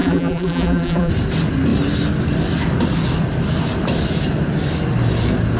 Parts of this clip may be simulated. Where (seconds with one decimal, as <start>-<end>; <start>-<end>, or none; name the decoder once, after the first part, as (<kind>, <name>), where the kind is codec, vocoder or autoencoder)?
0.0-1.1 (vocoder, BigVGAN v2)